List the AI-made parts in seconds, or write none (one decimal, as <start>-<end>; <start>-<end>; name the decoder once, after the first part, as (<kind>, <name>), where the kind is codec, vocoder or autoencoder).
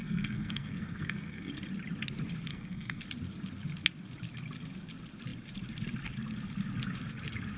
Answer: 0.0-1.5 (codec, SNAC); 2.5-3.0